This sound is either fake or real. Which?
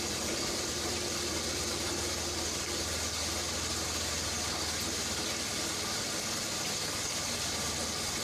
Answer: real